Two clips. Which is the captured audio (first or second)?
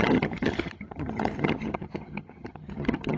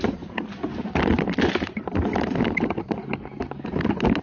second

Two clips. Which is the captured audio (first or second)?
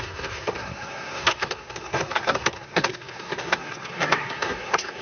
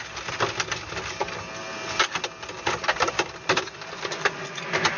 second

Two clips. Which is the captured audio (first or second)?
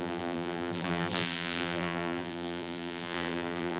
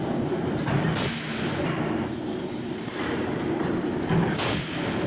second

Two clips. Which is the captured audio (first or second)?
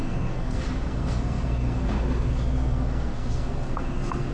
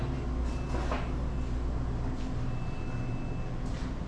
second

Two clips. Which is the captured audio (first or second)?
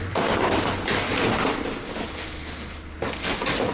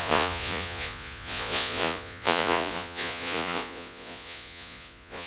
first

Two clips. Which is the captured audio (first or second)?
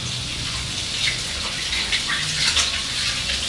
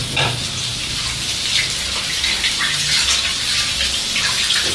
second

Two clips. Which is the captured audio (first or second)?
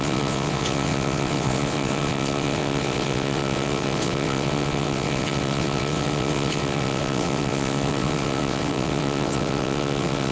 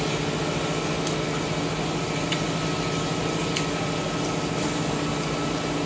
second